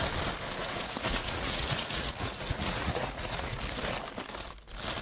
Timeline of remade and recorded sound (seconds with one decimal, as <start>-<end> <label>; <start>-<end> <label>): 0.0-0.6 recorded; 0.6-3.6 remade; 3.6-5.0 recorded